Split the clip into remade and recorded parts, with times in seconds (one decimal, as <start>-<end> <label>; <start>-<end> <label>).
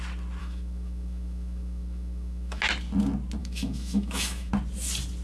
0.0-0.4 recorded; 0.4-2.6 remade; 2.6-3.4 recorded; 3.4-4.5 remade; 4.5-5.2 recorded